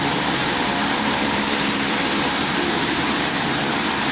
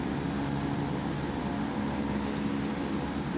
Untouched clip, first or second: second